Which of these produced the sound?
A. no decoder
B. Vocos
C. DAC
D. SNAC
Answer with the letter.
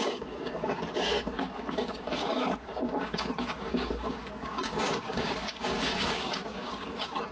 C